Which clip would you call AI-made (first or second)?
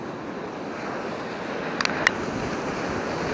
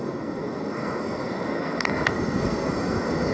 second